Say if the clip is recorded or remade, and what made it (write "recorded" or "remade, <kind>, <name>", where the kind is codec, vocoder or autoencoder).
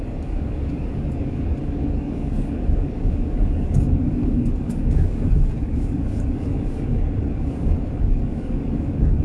remade, codec, DAC